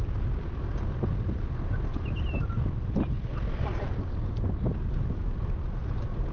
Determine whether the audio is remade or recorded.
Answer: recorded